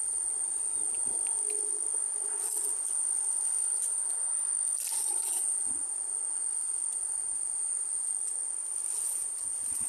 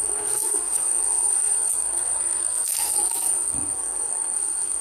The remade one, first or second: second